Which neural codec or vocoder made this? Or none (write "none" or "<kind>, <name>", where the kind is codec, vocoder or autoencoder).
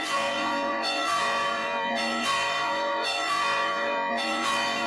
vocoder, Vocos